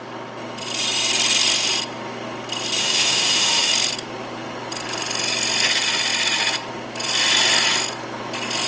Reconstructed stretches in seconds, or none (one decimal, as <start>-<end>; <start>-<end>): 2.8-3.7